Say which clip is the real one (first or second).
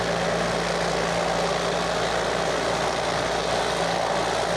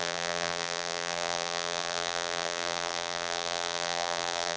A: first